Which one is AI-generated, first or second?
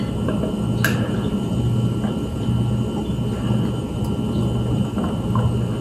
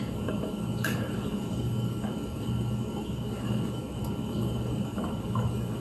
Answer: second